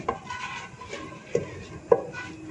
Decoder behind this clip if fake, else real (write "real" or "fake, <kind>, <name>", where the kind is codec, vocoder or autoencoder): real